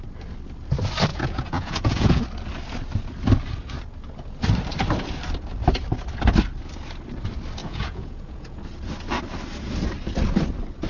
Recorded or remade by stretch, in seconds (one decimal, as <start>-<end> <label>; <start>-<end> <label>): 0.0-1.1 recorded; 1.1-2.2 remade; 2.2-7.6 recorded; 7.6-8.6 remade; 8.6-10.9 recorded